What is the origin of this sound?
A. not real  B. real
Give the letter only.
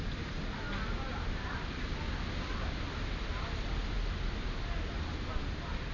B